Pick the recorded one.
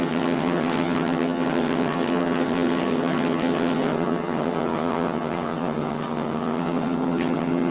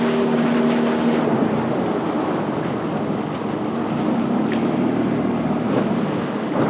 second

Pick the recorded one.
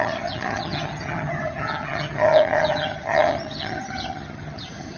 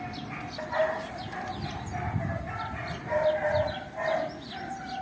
second